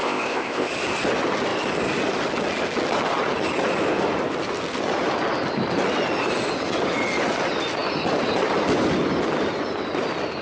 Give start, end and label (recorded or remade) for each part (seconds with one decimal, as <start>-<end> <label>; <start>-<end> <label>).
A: 0.0-0.7 remade; 0.7-10.4 recorded